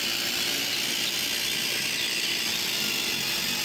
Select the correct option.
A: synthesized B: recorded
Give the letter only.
B